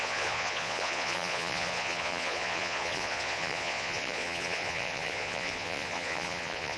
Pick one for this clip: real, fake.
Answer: fake